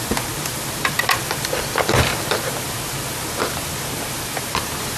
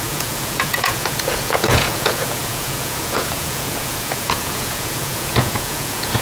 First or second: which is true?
first